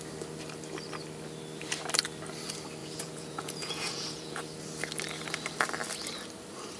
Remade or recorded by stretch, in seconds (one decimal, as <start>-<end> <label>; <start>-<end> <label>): 0.0-2.8 recorded; 2.8-4.4 remade; 4.4-6.8 recorded

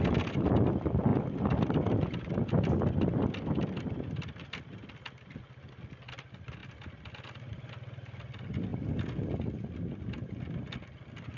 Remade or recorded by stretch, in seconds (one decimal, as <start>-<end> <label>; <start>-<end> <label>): 0.0-11.4 recorded

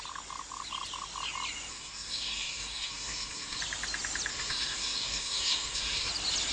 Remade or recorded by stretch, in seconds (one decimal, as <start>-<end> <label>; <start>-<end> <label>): 0.0-1.7 recorded; 1.7-3.6 remade; 3.6-4.3 recorded; 4.3-6.1 remade; 6.1-6.5 recorded

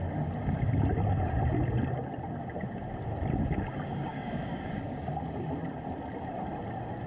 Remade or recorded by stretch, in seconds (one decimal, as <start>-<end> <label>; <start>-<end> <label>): 0.0-3.9 recorded; 3.9-5.1 remade; 5.1-7.1 recorded

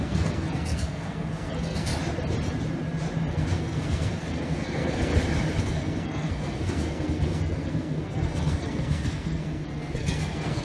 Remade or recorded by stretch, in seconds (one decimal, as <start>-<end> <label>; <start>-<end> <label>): 0.0-1.9 remade; 1.9-3.3 recorded; 3.3-5.1 remade; 5.1-5.6 recorded; 5.6-10.6 remade

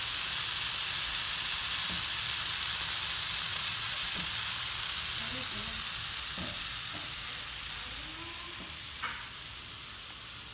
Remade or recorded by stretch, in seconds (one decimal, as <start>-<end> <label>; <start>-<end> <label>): 0.0-3.5 recorded; 3.5-4.3 remade; 4.3-10.5 recorded